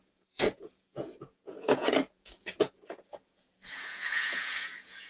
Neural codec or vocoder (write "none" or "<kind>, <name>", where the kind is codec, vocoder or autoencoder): vocoder, Vocos